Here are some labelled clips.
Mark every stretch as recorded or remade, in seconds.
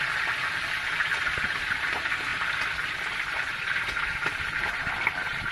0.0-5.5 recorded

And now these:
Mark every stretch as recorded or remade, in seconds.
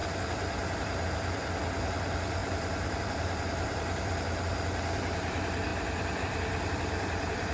0.0-5.7 remade; 5.7-6.2 recorded; 6.2-7.5 remade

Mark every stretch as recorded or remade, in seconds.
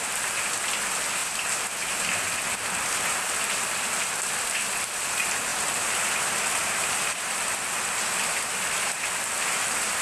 0.0-5.5 recorded; 5.5-6.0 remade; 6.0-6.6 recorded; 6.6-7.5 remade; 7.5-10.0 recorded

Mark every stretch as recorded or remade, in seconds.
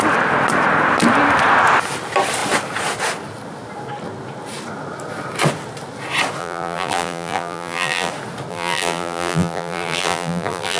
0.0-6.4 recorded; 6.4-8.1 remade; 8.1-8.5 recorded; 8.5-10.8 remade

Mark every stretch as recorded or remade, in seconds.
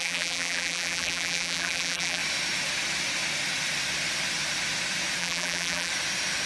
0.0-2.2 remade; 2.2-5.2 recorded; 5.2-5.9 remade; 5.9-6.5 recorded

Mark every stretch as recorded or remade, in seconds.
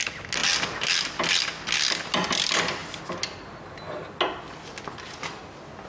0.0-5.9 recorded